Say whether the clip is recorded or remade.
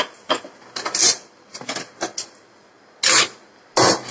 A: recorded